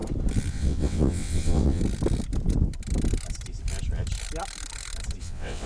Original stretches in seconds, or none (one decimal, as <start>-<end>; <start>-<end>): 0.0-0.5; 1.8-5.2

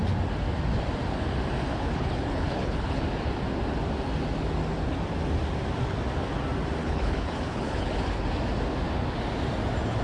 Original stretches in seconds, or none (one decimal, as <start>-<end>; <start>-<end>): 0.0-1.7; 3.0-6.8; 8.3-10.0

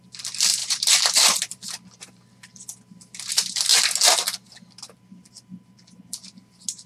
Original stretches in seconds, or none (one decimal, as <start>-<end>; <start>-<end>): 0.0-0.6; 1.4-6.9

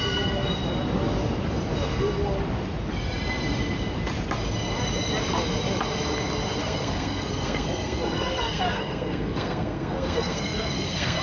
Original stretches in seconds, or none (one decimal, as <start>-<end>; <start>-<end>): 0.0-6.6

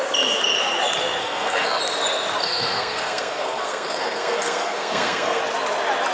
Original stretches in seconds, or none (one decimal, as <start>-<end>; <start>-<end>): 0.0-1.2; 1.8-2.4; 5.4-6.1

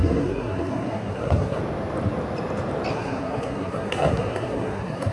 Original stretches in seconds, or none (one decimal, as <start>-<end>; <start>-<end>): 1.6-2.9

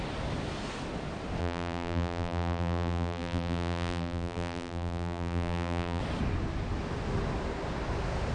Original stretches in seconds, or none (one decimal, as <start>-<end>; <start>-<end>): 0.0-1.4; 6.0-8.3